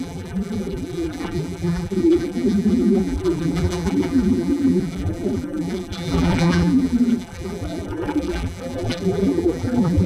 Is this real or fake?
fake